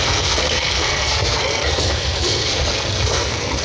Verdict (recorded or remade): remade